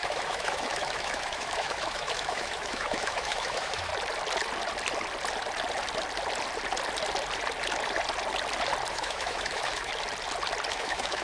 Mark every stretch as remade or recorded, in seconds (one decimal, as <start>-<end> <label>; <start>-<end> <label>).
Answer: 0.0-3.9 remade; 3.9-8.9 recorded; 8.9-9.9 remade; 9.9-10.7 recorded; 10.7-11.2 remade